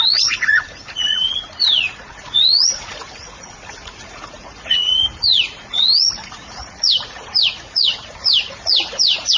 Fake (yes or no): yes